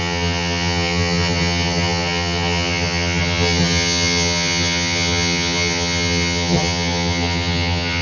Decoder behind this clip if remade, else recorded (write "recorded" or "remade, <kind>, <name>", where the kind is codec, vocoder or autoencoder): remade, vocoder, HiFi-GAN